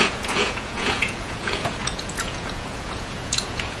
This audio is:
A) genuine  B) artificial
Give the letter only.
B